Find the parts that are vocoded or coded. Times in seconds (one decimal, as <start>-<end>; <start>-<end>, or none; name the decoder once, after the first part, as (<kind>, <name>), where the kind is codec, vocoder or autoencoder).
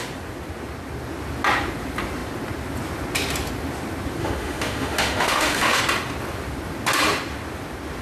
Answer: 4.2-5.8 (autoencoder, DAC-VAE)